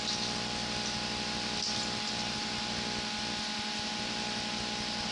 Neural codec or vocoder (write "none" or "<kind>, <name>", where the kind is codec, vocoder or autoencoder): none